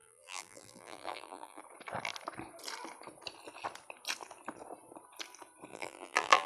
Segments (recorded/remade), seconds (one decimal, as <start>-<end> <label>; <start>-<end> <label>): 0.0-1.6 remade; 1.6-5.7 recorded; 5.7-6.5 remade